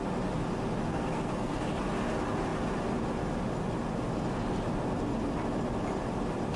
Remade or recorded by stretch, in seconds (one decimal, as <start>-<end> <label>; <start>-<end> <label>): 0.0-0.9 recorded; 0.9-1.6 remade; 1.6-6.6 recorded